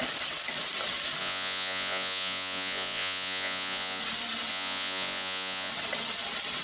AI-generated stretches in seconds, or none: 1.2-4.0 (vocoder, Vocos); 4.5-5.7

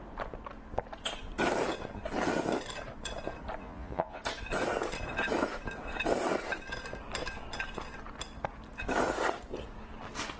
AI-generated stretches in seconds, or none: 3.6-4.2 (vocoder, Vocos)

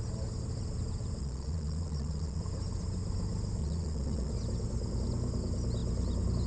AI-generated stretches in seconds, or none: 1.2-2.4 (vocoder, Vocos); 3.6-4.3

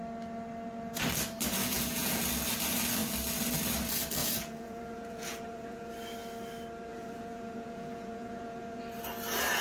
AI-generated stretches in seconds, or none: 1.6-2.2 (vocoder, Vocos); 4.2-5.9; 6.9-8.8

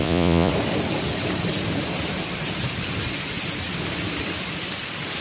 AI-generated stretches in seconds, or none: 0.0-0.5 (vocoder, Vocos)

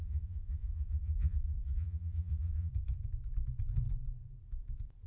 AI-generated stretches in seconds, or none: 0.0-2.7 (vocoder, Vocos)